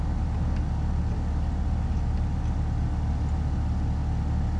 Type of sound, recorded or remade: recorded